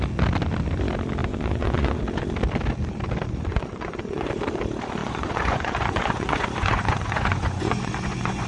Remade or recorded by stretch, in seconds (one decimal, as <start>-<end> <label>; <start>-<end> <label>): 0.0-1.2 recorded; 1.2-2.0 remade; 2.0-3.5 recorded; 3.5-4.3 remade; 4.3-5.0 recorded; 5.0-8.5 remade